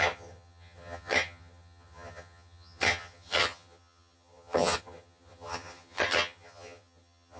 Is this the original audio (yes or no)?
no